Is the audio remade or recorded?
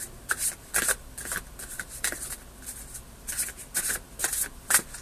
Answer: recorded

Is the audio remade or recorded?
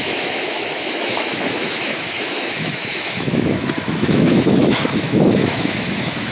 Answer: remade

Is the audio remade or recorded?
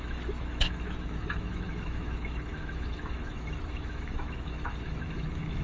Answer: remade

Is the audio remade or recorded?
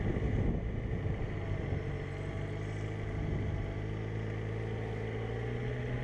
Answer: recorded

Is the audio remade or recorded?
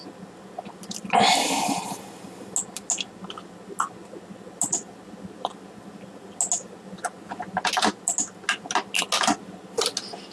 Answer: recorded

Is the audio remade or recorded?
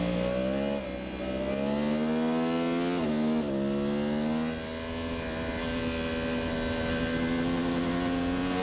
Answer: recorded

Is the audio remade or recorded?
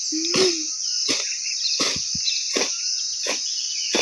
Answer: recorded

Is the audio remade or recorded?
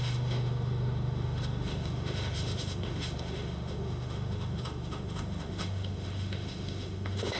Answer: remade